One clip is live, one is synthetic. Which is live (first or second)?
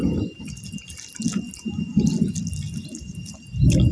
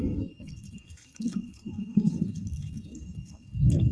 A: first